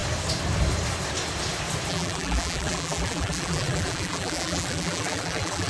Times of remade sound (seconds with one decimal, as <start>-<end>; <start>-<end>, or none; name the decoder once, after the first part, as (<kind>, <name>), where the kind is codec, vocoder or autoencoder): 1.9-5.7 (vocoder, BigVGAN v2)